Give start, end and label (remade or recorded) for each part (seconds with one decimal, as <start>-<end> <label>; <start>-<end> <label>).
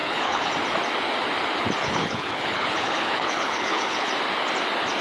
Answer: 0.0-0.5 remade; 0.5-1.8 recorded; 1.8-4.1 remade; 4.1-5.0 recorded